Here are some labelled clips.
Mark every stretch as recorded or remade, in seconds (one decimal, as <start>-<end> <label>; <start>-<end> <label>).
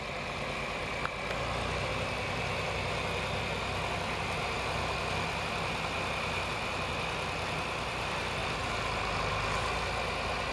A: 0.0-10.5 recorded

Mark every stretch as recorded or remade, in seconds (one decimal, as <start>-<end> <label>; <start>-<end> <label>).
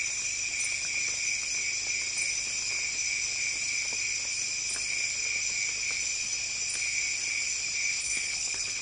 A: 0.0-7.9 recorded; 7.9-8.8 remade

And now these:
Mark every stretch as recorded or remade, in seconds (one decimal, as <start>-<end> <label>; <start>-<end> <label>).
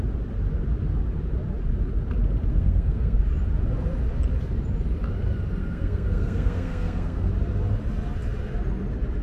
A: 0.0-2.5 recorded; 2.5-3.2 remade; 3.2-5.6 recorded; 5.6-7.3 remade; 7.3-9.2 recorded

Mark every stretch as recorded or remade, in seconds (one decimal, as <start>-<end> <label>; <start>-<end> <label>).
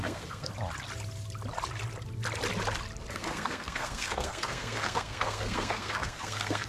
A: 0.0-0.5 remade; 0.5-3.1 recorded; 3.1-6.7 remade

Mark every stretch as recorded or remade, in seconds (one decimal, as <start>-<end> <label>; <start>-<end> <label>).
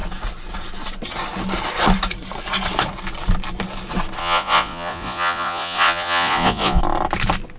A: 0.0-4.2 recorded; 4.2-6.8 remade; 6.8-7.6 recorded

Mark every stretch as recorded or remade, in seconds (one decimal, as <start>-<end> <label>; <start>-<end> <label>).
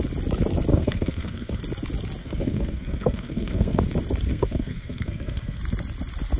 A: 0.0-0.7 recorded; 0.7-1.6 remade; 1.6-2.2 recorded; 2.2-3.8 remade; 3.8-4.3 recorded; 4.3-5.6 remade; 5.6-6.4 recorded